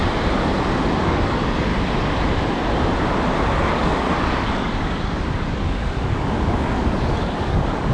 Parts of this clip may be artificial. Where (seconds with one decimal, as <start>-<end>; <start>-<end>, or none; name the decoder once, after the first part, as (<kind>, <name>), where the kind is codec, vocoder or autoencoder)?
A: 1.0-1.7 (codec, DAC); 3.7-7.9